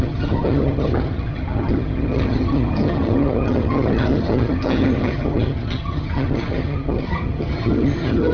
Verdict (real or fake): fake